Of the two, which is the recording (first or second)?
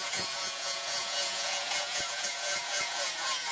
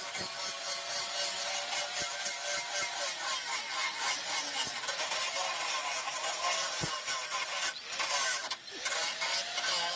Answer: second